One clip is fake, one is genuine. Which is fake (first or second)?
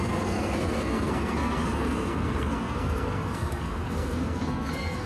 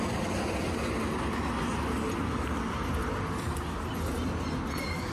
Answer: first